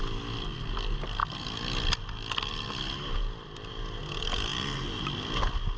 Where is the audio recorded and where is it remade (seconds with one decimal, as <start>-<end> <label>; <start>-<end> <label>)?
0.0-5.8 recorded